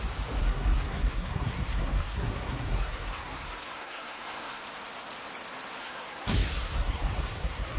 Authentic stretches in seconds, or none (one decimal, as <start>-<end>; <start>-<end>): 0.0-0.4; 4.6-5.8